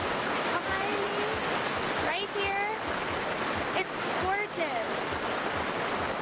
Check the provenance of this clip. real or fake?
real